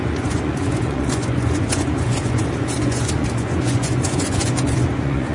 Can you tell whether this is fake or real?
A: fake